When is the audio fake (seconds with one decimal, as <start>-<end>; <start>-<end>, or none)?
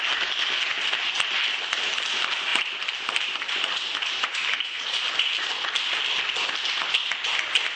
2.5-5.5